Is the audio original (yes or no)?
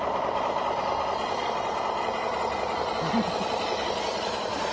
yes